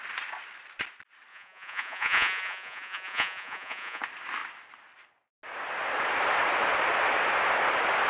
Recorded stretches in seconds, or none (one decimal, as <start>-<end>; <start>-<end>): 0.0-1.3; 4.0-8.1